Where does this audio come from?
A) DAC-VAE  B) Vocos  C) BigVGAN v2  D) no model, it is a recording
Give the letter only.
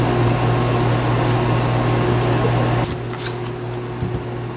D